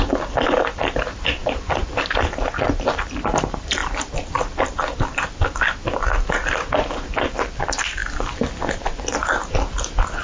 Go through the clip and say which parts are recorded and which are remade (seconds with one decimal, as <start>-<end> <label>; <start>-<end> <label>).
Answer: 0.0-1.4 recorded; 1.4-2.1 remade; 2.1-10.2 recorded